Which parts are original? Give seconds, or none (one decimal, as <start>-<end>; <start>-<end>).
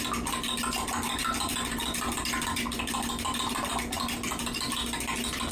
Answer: 0.0-5.5